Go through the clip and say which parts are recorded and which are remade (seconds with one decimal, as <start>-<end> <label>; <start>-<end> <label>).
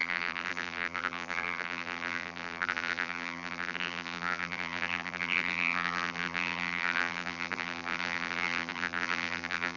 0.0-9.8 remade